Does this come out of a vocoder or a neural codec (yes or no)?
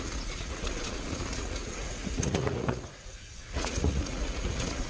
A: yes